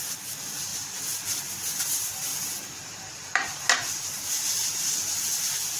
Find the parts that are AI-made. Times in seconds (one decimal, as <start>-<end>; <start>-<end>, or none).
0.7-1.4; 2.3-5.8